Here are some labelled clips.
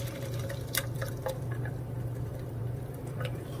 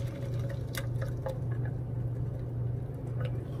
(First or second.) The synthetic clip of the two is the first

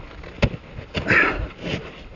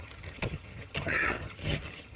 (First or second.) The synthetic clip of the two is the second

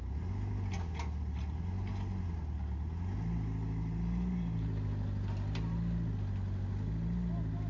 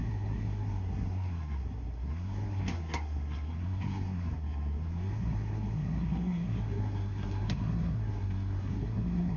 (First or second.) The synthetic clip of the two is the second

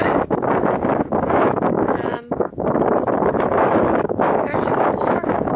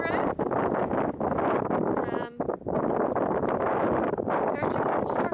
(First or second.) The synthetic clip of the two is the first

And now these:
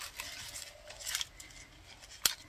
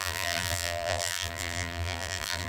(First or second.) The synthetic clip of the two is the second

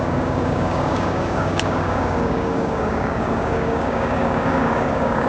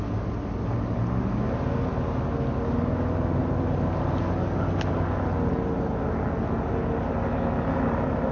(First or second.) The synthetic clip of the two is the first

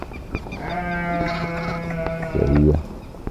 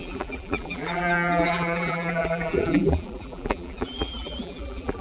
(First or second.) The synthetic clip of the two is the second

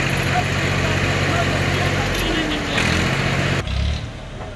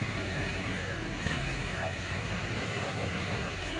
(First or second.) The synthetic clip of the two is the second